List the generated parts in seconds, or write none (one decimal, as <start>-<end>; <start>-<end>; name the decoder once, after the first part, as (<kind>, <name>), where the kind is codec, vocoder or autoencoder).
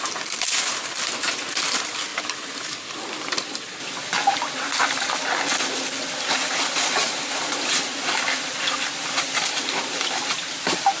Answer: 2.1-2.7 (vocoder, BigVGAN v2)